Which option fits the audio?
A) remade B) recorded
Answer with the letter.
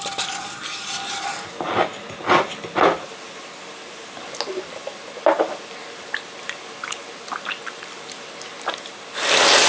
B